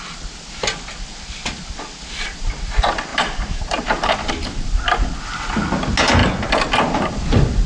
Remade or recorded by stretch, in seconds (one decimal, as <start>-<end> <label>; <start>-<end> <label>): 0.0-3.1 recorded; 3.1-4.3 remade; 4.3-7.7 recorded